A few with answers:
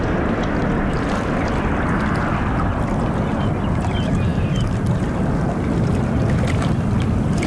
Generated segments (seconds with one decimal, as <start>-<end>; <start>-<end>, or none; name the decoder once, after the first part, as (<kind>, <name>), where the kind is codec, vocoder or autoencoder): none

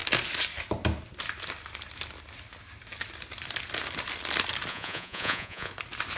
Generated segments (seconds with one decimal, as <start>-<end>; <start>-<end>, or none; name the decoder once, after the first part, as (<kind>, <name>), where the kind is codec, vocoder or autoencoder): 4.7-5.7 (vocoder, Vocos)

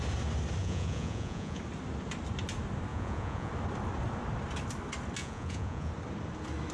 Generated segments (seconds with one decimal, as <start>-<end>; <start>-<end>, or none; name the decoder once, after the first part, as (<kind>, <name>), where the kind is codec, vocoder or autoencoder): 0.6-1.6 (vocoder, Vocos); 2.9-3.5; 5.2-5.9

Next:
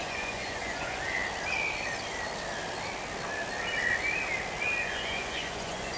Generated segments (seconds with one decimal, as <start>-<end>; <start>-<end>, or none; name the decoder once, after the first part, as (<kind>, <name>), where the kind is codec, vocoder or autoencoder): 0.0-1.2 (vocoder, Vocos); 4.8-6.0

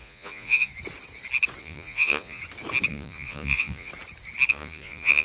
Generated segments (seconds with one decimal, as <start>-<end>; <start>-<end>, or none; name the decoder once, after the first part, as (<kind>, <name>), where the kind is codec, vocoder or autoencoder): 0.0-0.7 (vocoder, Vocos); 1.6-2.4; 2.9-3.9; 4.5-5.2